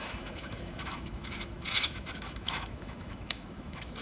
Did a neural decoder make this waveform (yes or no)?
yes